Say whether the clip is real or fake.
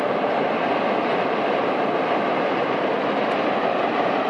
real